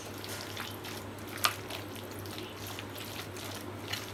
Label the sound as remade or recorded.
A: recorded